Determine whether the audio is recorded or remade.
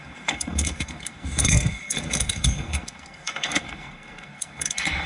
remade